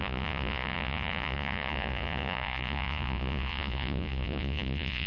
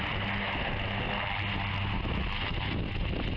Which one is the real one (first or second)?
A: second